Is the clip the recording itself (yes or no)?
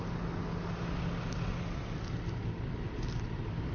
yes